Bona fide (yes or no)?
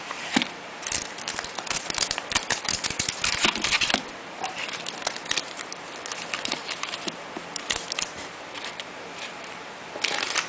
no